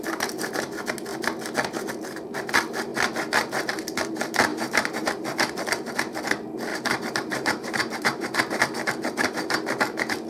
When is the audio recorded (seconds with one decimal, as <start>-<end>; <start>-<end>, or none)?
0.0-4.5; 5.1-6.7; 8.6-10.3